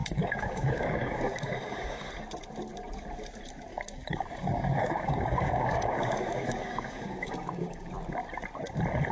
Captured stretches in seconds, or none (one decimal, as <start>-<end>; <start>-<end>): 2.1-3.7; 7.9-9.1